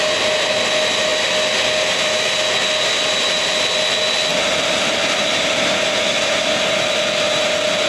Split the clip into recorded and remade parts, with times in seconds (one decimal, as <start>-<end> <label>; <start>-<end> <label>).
0.0-7.9 recorded